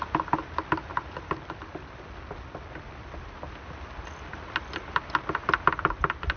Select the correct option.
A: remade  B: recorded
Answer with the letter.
B